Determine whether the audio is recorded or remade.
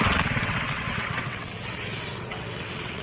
remade